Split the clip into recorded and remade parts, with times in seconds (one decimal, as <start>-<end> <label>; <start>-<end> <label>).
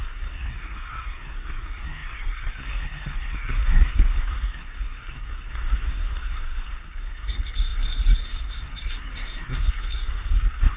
0.0-10.8 remade